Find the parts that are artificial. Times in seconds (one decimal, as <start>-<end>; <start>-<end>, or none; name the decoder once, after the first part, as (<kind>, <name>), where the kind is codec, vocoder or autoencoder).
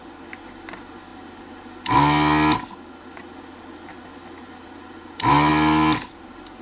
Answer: none